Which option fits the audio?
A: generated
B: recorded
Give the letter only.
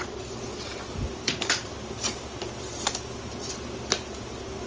B